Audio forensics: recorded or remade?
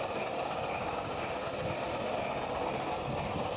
remade